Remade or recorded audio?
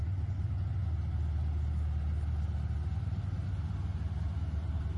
recorded